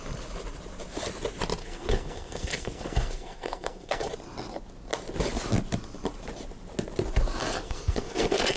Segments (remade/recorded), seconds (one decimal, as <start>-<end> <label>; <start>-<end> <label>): 0.0-1.6 recorded; 1.6-4.1 remade; 4.1-7.4 recorded; 7.4-8.6 remade